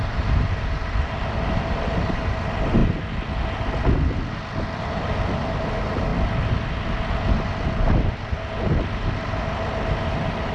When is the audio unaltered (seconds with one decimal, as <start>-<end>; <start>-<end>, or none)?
2.8-4.8; 6.1-10.1